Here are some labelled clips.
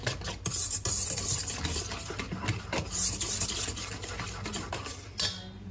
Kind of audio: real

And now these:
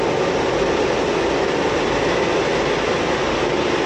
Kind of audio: real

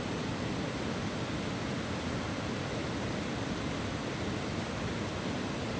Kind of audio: real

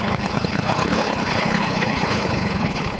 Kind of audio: fake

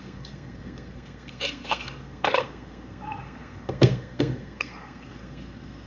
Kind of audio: fake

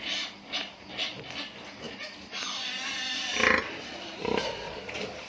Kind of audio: real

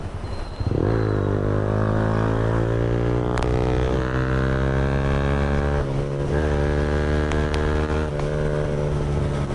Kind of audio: real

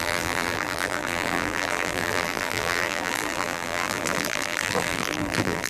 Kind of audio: fake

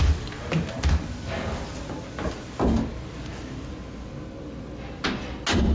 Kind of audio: real